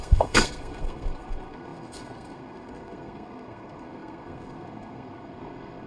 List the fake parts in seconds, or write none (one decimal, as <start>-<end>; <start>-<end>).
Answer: 0.0-5.9